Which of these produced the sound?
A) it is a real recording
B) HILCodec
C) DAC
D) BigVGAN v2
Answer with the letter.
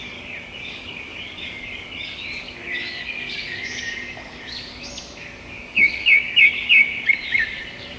C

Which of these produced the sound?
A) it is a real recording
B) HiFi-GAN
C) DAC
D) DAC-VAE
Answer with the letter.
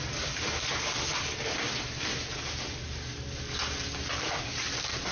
A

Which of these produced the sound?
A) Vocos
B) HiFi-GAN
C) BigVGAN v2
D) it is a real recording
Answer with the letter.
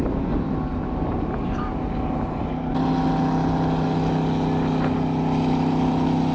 D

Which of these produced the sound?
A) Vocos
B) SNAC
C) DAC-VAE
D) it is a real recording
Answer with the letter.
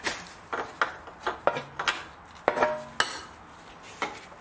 D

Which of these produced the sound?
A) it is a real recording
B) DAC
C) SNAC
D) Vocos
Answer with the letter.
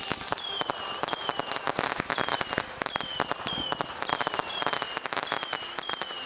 A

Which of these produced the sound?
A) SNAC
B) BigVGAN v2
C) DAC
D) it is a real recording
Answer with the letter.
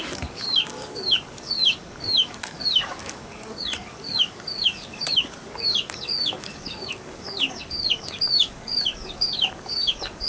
C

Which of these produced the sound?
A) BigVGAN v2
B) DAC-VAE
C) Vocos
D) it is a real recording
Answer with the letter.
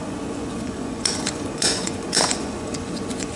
C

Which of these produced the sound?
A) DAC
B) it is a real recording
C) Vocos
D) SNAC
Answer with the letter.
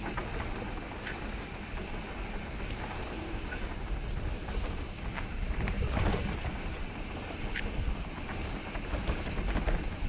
B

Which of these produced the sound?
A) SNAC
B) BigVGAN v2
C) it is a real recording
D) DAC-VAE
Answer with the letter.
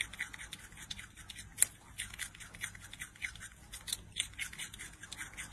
C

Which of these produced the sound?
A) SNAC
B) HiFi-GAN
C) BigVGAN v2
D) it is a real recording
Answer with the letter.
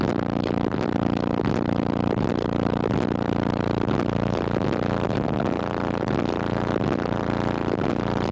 C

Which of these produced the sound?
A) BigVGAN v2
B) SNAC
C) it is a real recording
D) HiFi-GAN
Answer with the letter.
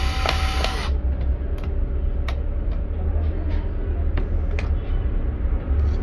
C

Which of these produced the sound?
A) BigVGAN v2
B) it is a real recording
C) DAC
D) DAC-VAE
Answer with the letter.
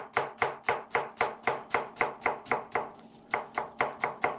B